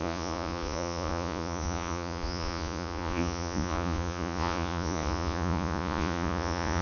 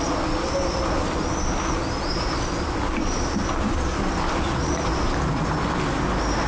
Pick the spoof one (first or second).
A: first